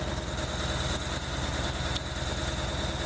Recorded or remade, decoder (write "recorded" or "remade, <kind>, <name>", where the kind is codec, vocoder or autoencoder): recorded